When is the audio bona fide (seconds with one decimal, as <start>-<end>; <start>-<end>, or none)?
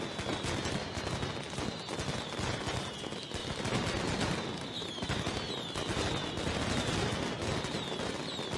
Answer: 0.0-8.6